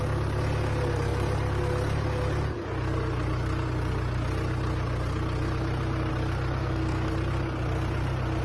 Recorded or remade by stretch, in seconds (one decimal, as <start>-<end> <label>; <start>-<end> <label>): 0.0-6.6 recorded; 6.6-7.1 remade; 7.1-8.4 recorded